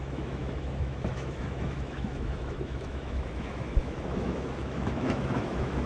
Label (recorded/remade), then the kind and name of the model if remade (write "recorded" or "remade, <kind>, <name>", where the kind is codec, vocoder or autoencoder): remade, autoencoder, DAC-VAE